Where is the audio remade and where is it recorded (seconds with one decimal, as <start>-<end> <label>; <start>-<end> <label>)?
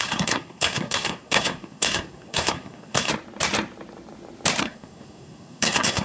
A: 0.0-3.1 remade; 3.1-4.6 recorded; 4.6-6.0 remade